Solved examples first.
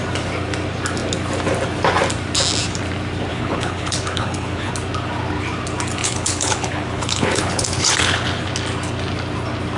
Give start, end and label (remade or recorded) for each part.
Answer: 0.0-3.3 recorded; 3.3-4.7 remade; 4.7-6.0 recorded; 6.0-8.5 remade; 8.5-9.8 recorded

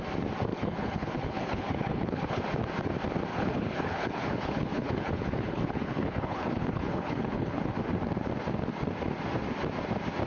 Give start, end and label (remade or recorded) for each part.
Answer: 0.0-0.5 recorded; 0.5-2.4 remade; 2.4-3.3 recorded; 3.3-7.6 remade; 7.6-10.3 recorded

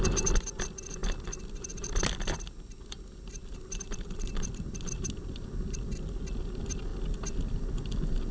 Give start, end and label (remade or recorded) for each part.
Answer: 0.0-8.3 recorded

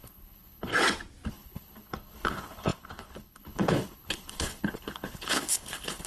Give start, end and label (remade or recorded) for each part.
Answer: 0.0-0.7 remade; 0.7-1.3 recorded; 1.3-6.1 remade